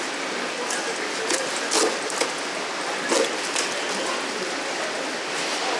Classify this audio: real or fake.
real